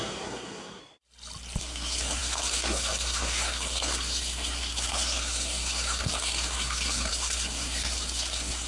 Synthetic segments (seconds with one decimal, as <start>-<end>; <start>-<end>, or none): 0.0-0.8; 1.6-8.7